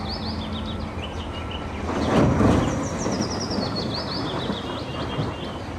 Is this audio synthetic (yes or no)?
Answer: no